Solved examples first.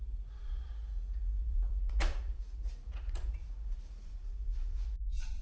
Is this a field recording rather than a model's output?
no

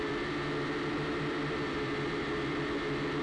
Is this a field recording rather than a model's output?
no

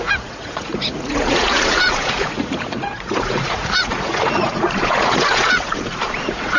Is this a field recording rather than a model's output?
no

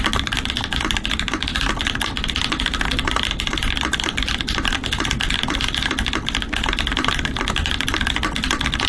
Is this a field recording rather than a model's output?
no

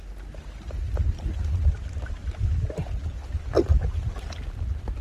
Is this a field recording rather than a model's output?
yes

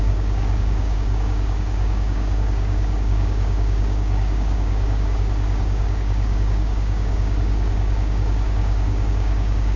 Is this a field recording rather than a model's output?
no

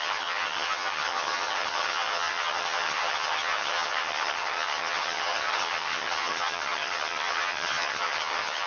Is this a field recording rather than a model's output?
no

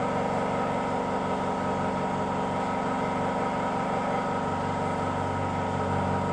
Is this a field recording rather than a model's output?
yes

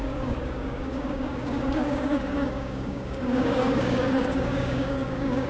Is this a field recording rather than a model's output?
no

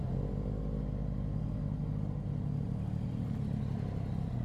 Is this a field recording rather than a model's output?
yes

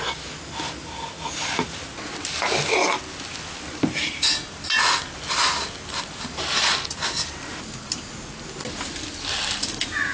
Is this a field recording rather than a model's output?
yes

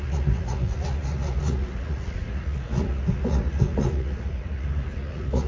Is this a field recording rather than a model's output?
no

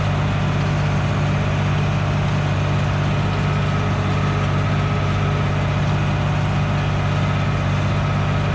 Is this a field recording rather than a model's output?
yes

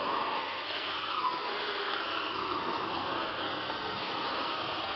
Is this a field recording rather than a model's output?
no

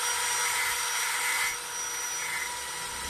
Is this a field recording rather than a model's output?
yes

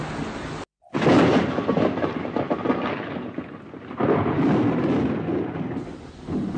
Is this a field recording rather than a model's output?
yes